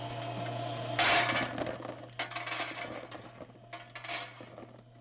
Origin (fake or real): real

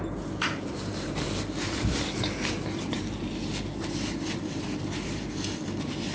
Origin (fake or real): real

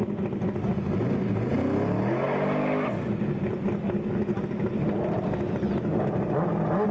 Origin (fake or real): real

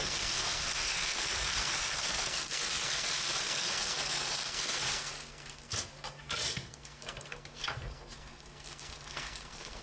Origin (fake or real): fake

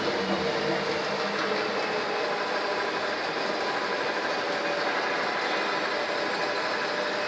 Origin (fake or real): real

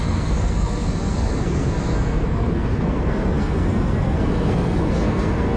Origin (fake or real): fake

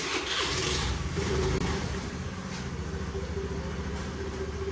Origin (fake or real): real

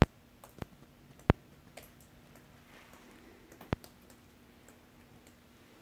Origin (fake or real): real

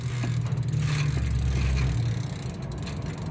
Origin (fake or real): real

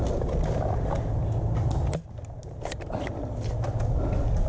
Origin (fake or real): real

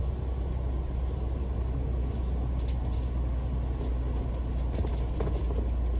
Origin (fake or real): real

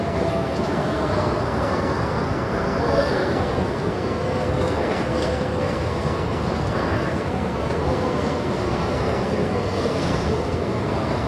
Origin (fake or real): fake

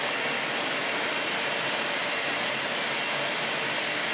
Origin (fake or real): real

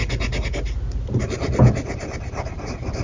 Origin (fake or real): real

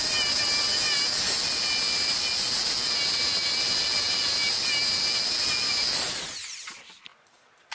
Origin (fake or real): real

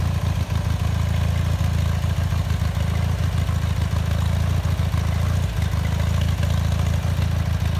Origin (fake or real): real